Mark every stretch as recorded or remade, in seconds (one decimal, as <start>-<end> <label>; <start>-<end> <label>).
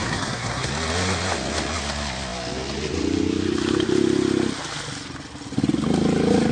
0.0-0.7 remade; 0.7-6.5 recorded